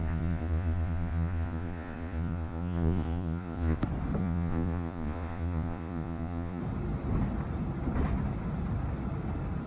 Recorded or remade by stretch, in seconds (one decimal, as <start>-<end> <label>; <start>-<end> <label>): 0.0-3.8 remade; 3.8-4.2 recorded; 4.2-6.6 remade; 6.6-9.7 recorded